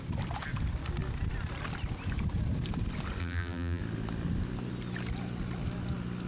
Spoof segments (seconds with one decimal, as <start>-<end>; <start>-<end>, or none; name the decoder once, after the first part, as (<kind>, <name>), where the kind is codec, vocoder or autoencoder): 3.2-3.8 (vocoder, BigVGAN v2)